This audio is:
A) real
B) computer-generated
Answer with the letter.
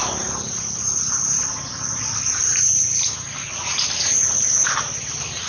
A